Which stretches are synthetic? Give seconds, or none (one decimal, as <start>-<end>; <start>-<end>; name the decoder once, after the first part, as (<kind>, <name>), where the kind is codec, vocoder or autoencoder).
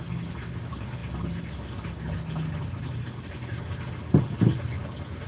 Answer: none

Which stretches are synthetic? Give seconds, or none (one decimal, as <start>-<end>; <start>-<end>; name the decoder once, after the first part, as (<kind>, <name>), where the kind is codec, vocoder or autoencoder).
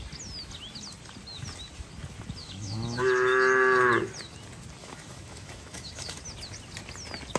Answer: 2.4-3.9 (autoencoder, DAC-VAE); 4.8-6.2